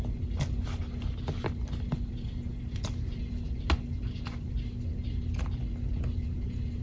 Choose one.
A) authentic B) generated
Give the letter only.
A